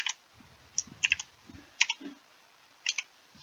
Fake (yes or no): no